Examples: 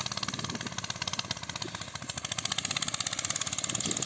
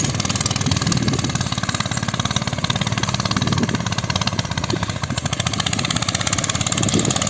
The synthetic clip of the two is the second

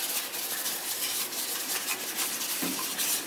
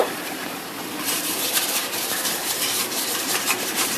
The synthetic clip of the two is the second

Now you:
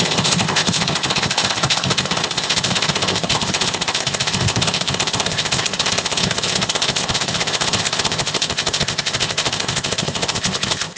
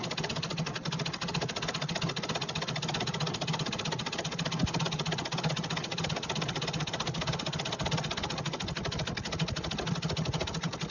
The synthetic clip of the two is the first